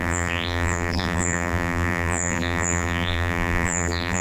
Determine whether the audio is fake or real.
fake